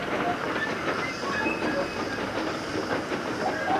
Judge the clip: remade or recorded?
recorded